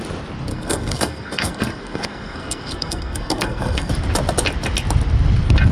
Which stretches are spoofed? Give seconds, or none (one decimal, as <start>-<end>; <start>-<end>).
0.5-3.9